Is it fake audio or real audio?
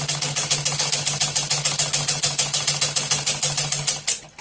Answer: real